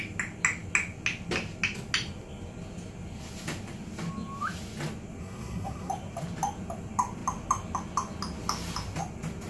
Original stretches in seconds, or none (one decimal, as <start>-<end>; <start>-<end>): 0.0-5.2; 5.9-9.5